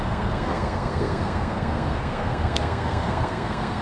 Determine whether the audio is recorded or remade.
remade